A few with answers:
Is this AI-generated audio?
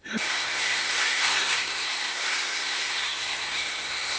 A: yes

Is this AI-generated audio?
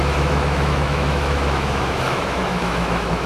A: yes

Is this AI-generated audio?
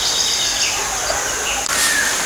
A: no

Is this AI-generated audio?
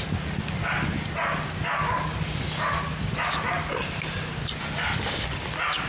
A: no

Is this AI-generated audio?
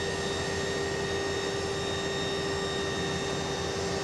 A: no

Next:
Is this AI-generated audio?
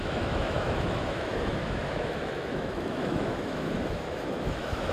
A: yes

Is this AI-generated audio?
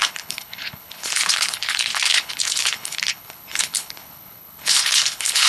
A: yes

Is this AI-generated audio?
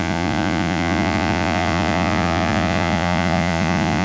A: yes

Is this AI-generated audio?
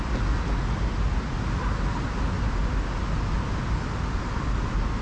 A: no